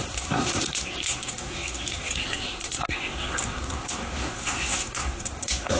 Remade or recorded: remade